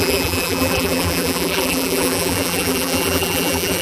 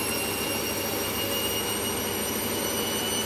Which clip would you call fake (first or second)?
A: first